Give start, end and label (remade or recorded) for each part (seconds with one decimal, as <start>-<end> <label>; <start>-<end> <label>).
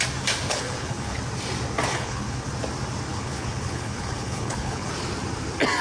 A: 0.0-0.5 recorded; 0.5-1.2 remade; 1.2-1.9 recorded; 1.9-2.5 remade; 2.5-3.1 recorded; 3.1-4.9 remade; 4.9-5.8 recorded